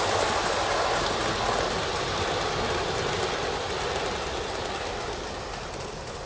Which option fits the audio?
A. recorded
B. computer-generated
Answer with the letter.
A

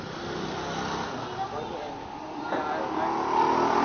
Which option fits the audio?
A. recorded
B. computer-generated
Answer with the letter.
A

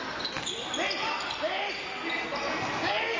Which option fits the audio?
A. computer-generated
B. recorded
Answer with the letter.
B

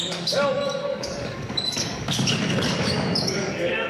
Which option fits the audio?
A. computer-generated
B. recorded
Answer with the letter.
A